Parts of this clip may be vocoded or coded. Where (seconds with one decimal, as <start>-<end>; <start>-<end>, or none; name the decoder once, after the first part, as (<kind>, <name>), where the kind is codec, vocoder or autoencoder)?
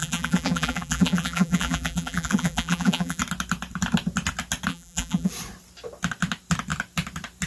0.0-3.2 (vocoder, BigVGAN v2); 4.7-5.3